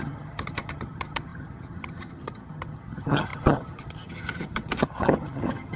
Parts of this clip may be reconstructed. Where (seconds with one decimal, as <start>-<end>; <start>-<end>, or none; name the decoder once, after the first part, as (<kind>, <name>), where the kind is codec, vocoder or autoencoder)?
0.0-5.8 (vocoder, HiFi-GAN)

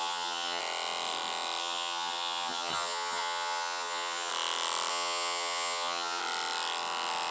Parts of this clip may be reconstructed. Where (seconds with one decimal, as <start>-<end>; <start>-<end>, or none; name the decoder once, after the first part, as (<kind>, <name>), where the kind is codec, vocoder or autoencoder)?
0.0-0.6 (vocoder, HiFi-GAN); 1.6-4.3; 4.9-6.2

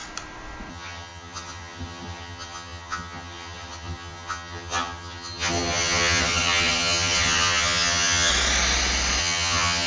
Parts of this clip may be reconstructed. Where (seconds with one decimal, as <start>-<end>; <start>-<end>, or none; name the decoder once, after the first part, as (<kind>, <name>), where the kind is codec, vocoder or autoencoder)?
0.7-8.3 (vocoder, HiFi-GAN); 9.2-9.9

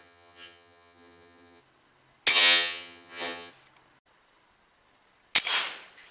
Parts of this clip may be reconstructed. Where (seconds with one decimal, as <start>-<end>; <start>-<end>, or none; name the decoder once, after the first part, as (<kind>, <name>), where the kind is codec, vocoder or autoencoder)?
0.0-1.6 (vocoder, HiFi-GAN); 2.3-3.5

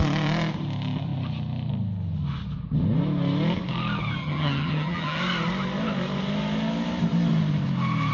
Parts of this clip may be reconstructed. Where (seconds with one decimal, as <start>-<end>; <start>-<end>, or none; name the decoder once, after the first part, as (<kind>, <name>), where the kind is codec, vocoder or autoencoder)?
4.2-5.2 (vocoder, HiFi-GAN)

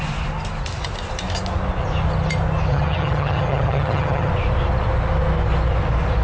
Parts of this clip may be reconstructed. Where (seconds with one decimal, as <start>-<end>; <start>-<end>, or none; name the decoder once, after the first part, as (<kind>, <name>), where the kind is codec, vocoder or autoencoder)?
2.7-4.3 (vocoder, HiFi-GAN)

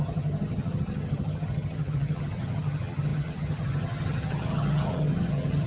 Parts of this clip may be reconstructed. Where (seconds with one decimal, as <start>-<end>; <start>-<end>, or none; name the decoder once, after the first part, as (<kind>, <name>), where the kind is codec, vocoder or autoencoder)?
0.0-5.7 (vocoder, HiFi-GAN)

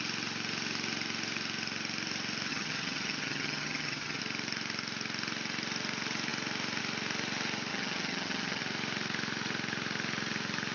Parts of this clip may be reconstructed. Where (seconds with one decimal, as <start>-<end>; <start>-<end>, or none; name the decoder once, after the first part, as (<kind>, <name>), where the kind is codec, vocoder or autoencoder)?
2.5-4.2 (vocoder, HiFi-GAN); 7.7-8.6